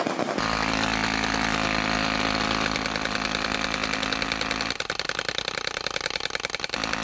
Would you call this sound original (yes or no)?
yes